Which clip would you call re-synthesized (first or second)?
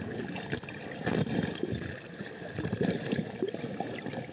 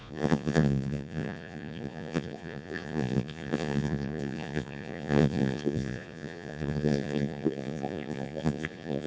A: second